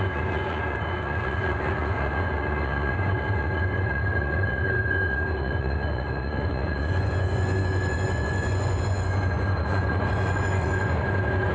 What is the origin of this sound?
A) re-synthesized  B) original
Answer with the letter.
A